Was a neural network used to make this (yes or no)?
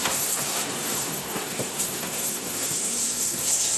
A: yes